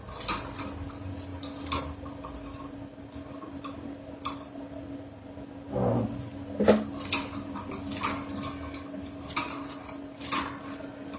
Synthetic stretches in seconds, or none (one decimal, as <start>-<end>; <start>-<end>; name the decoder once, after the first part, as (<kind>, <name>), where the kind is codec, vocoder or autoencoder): none